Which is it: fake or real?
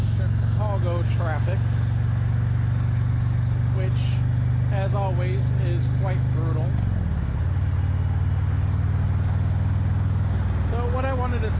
real